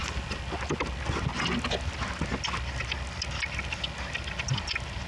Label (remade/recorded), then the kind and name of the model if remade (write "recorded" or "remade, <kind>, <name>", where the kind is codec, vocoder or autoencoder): recorded